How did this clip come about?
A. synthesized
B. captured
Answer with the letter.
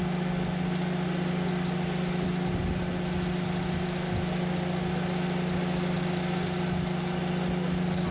B